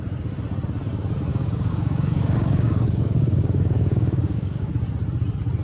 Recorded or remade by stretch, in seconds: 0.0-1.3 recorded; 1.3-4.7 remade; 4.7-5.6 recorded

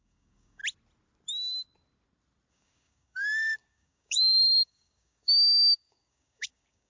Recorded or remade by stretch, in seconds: 0.0-0.6 remade; 0.6-2.5 recorded; 2.5-6.9 remade

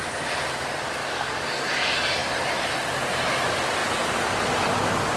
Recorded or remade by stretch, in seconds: 0.0-1.0 recorded; 1.0-1.8 remade; 1.8-5.2 recorded

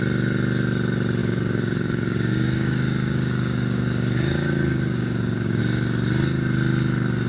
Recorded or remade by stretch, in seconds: 0.0-1.2 recorded; 1.2-5.6 remade; 5.6-7.3 recorded

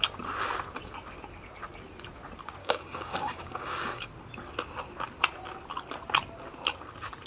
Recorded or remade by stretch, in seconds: 0.0-2.6 recorded; 2.6-4.1 remade; 4.1-7.3 recorded

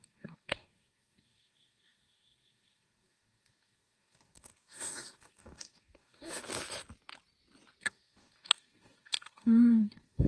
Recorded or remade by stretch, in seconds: 0.0-6.4 remade; 6.4-7.8 recorded; 7.8-10.3 remade

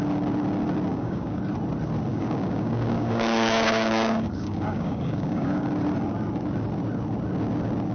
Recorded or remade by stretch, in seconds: 0.0-0.9 recorded; 0.9-1.4 remade; 1.4-2.1 recorded; 2.1-5.7 remade; 5.7-7.9 recorded